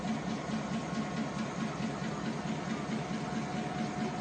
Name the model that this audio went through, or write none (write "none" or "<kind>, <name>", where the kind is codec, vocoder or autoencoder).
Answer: none